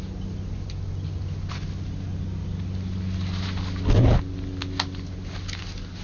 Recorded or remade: recorded